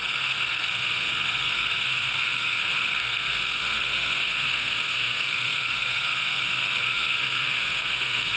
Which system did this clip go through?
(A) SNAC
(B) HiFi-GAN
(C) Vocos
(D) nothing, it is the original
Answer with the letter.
A